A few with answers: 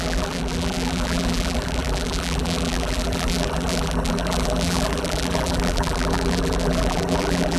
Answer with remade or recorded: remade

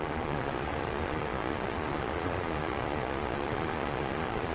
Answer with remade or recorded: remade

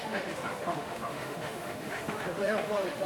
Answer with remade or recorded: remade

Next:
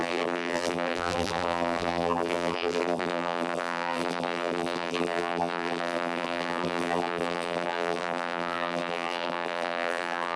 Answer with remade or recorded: remade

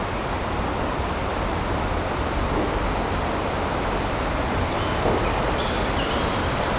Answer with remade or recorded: recorded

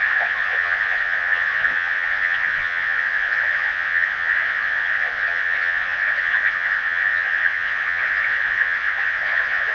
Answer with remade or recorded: remade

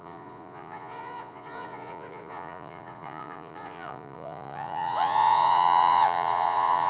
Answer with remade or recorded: remade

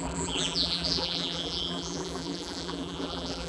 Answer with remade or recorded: remade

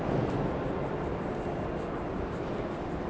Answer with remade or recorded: recorded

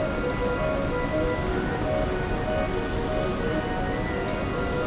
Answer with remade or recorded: recorded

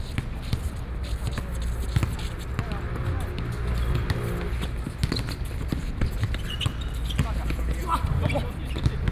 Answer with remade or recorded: recorded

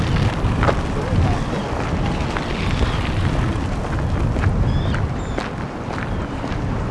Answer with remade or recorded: recorded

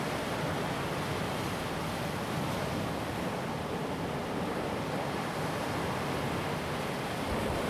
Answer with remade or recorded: recorded